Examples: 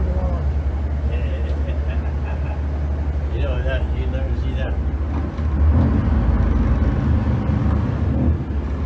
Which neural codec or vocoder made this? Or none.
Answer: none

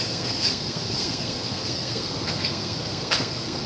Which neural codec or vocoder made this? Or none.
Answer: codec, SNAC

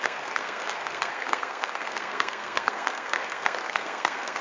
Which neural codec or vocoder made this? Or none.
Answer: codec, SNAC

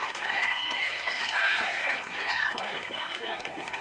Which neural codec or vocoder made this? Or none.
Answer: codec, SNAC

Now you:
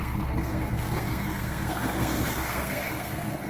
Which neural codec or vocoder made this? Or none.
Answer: codec, SNAC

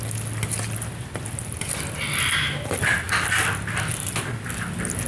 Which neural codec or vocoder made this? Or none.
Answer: none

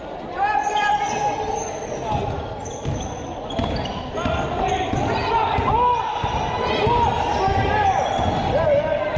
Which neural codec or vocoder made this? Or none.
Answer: none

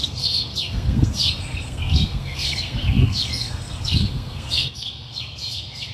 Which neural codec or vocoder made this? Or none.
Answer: codec, SNAC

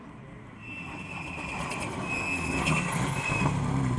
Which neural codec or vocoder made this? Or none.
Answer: none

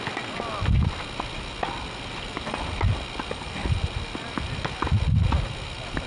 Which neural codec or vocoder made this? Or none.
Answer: none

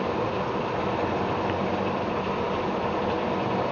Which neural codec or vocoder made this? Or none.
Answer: none